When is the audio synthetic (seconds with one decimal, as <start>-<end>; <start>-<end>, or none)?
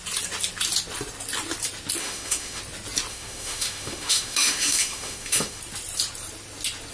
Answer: 2.0-2.6; 3.1-5.6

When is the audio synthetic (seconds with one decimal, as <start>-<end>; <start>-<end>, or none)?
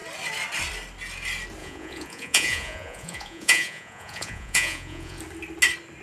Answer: 1.6-5.2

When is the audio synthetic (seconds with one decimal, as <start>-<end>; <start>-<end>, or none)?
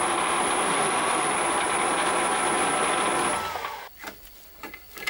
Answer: 0.7-1.3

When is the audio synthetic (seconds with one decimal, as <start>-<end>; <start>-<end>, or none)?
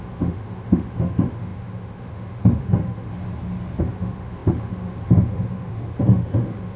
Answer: 0.0-3.1; 3.8-6.8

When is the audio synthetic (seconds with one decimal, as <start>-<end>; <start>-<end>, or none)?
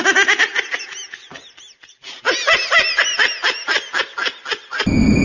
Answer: none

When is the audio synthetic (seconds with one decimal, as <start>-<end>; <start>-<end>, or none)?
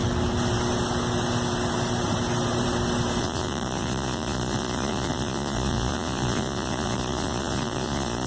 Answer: 3.2-8.3